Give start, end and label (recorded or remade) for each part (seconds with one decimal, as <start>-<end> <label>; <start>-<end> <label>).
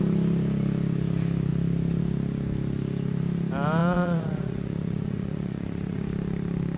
0.0-3.8 recorded; 3.8-6.0 remade; 6.0-6.8 recorded